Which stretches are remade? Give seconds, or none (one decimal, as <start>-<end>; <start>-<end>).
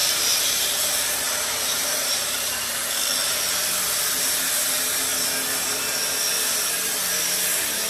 0.0-2.7